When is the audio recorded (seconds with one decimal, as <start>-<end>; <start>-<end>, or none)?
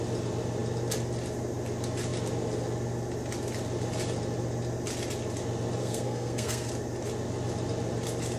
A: 0.0-5.8; 6.7-8.4